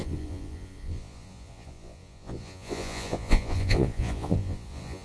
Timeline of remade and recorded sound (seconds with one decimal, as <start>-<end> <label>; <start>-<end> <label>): 0.0-5.0 remade